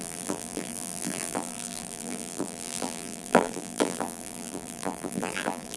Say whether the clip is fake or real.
fake